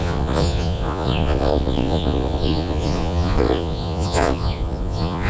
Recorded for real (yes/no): no